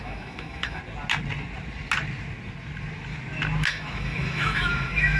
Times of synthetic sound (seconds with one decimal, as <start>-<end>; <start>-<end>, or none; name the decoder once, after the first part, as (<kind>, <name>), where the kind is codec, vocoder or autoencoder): 0.0-0.8 (autoencoder, DAC-VAE); 3.7-5.2